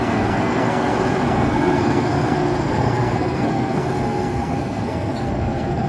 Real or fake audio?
fake